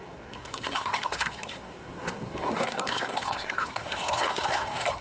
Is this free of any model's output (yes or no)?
no